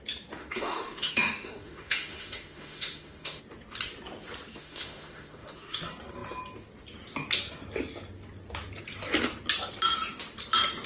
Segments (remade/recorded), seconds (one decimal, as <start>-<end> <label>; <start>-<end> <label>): 0.0-0.4 recorded; 0.4-3.4 remade; 3.4-4.6 recorded; 4.6-5.8 remade; 5.8-10.9 recorded